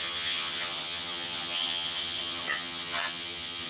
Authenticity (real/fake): fake